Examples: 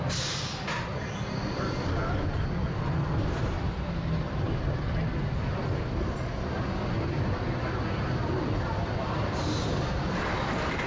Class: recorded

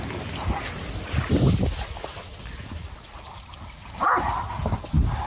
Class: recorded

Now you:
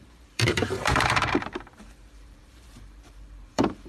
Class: remade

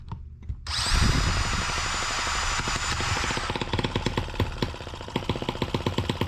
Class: recorded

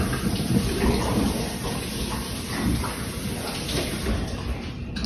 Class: recorded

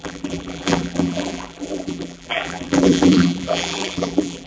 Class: remade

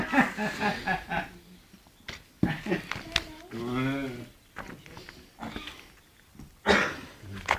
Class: recorded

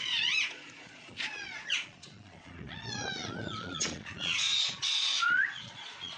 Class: remade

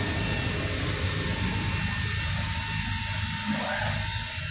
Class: recorded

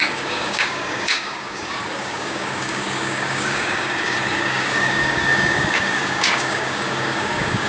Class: remade